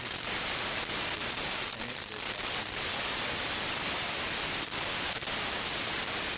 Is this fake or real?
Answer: real